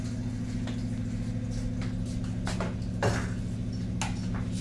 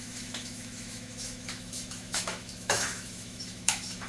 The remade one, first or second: second